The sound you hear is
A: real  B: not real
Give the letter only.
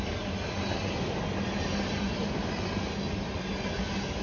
A